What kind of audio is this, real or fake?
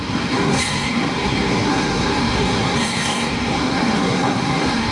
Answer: fake